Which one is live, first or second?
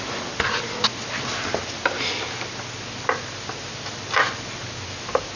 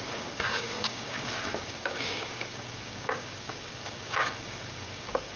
first